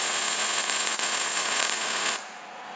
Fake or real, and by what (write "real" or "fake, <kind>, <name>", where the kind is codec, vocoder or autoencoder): fake, vocoder, Vocos